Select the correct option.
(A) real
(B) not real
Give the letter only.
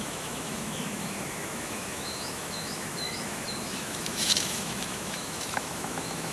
B